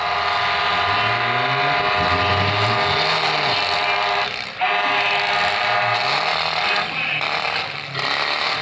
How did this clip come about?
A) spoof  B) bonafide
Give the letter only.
B